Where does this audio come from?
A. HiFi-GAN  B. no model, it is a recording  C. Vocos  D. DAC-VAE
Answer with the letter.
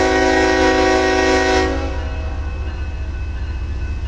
B